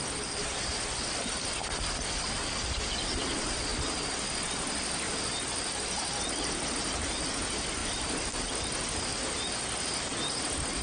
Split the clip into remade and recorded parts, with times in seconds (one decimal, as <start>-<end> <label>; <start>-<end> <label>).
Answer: 0.0-7.8 recorded; 7.8-8.4 remade; 8.4-10.8 recorded